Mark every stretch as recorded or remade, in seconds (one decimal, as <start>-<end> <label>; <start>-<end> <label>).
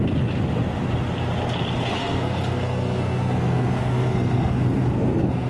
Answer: 0.0-2.0 recorded; 2.0-5.5 remade